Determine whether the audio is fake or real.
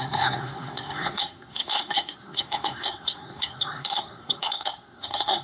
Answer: fake